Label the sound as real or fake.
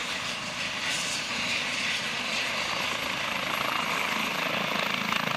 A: real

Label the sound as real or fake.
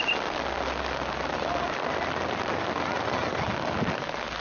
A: real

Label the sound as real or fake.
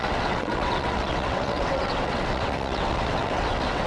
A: fake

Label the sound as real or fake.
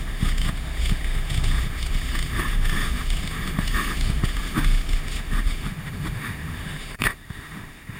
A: fake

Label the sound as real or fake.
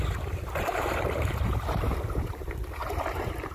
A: fake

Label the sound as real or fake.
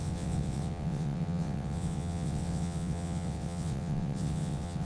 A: fake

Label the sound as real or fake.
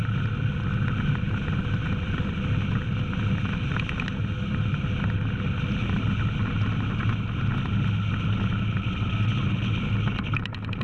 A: real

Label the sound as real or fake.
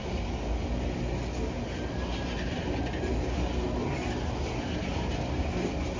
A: real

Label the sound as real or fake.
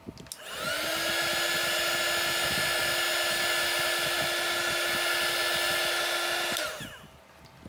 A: real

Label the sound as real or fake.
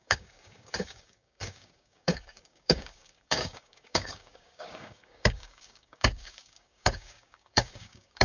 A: fake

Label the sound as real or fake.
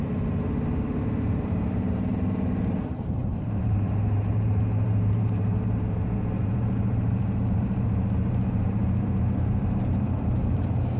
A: fake